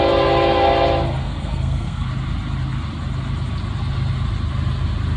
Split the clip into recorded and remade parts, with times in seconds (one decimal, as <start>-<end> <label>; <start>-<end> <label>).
0.0-1.2 recorded; 1.2-2.1 remade; 2.1-5.2 recorded